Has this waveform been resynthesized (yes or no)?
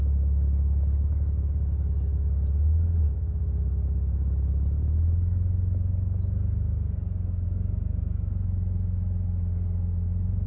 no